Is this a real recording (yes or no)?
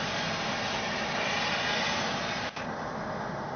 yes